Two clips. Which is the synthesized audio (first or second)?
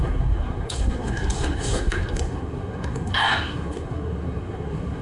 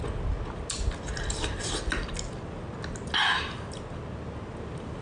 first